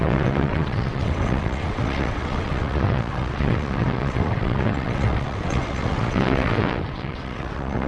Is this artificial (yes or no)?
yes